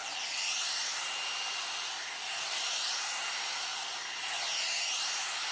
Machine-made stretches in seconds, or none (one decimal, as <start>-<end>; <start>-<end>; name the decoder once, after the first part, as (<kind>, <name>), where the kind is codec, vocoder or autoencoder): 2.2-2.7 (codec, DAC)